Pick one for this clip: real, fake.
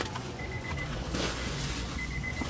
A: fake